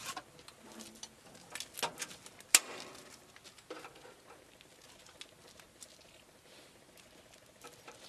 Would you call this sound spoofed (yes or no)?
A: no